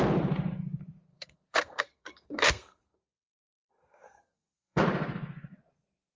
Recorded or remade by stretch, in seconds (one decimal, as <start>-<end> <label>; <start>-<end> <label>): 0.0-1.1 recorded; 1.1-4.8 remade; 4.8-6.2 recorded